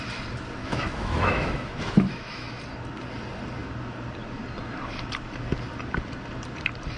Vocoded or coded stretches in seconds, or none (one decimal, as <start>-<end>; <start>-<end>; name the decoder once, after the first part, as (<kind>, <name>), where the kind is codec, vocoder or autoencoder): 0.6-2.6 (autoencoder, DAC-VAE)